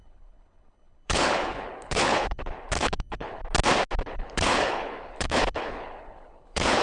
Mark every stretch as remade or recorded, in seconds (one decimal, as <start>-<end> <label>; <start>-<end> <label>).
0.0-3.4 remade; 3.4-4.0 recorded; 4.0-6.8 remade